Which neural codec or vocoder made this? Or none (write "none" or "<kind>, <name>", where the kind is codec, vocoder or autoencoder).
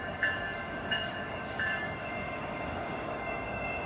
codec, DAC